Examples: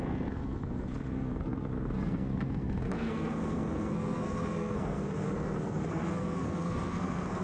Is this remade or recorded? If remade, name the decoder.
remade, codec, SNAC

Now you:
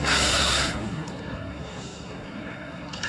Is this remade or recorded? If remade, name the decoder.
remade, codec, SNAC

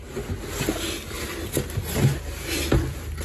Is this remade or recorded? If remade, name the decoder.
recorded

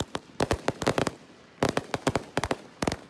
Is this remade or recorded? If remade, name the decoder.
recorded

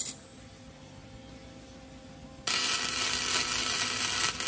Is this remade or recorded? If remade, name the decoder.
recorded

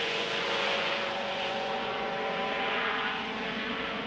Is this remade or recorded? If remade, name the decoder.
remade, vocoder, Vocos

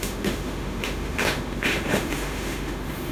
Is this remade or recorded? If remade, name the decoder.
remade, autoencoder, DAC-VAE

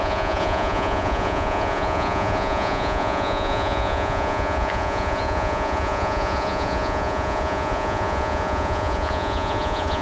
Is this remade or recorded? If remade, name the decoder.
remade, vocoder, Vocos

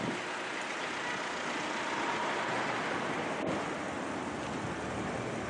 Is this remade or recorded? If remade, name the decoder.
recorded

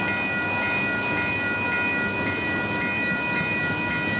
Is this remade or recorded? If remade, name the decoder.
recorded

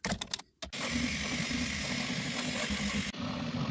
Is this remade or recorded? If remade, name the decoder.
recorded